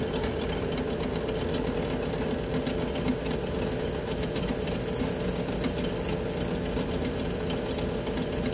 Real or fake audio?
real